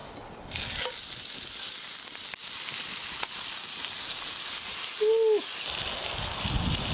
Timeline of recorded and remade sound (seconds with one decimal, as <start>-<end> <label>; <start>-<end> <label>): 0.0-6.9 recorded